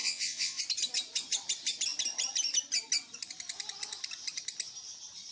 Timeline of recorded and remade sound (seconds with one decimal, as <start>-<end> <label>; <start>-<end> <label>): 0.0-0.6 remade; 0.6-5.3 recorded